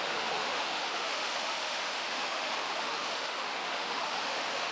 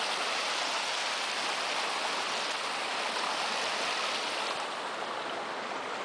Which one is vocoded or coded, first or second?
first